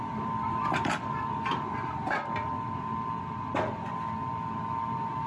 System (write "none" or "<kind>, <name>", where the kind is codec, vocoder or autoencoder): none